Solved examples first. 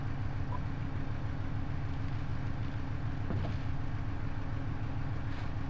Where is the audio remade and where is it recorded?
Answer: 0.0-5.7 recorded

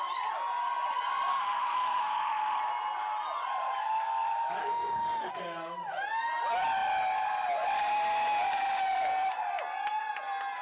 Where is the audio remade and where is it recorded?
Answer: 0.0-1.3 recorded; 1.3-2.6 remade; 2.6-4.6 recorded; 4.6-5.3 remade; 5.3-10.6 recorded

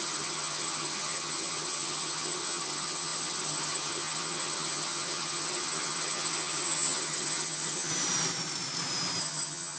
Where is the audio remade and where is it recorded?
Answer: 0.0-7.9 remade; 7.9-9.2 recorded; 9.2-9.8 remade

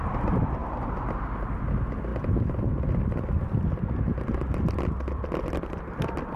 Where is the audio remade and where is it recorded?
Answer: 0.0-0.6 recorded; 0.6-1.5 remade; 1.5-6.4 recorded

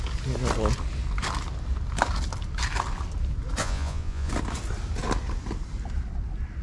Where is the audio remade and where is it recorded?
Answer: 0.0-3.6 recorded; 3.6-4.3 remade; 4.3-6.6 recorded

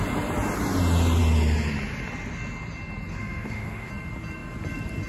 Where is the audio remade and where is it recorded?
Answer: 0.0-3.1 recorded; 3.1-3.9 remade; 3.9-5.1 recorded

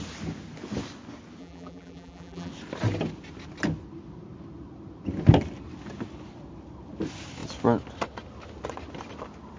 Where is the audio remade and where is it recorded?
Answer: 0.0-1.4 recorded; 1.4-2.5 remade; 2.5-9.6 recorded